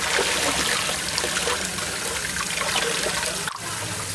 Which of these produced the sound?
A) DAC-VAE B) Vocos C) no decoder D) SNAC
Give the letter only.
C